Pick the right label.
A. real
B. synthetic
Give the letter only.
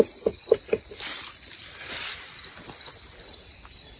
A